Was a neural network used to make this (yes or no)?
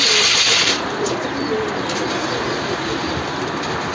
no